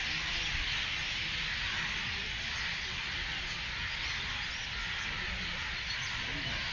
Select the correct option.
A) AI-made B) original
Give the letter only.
B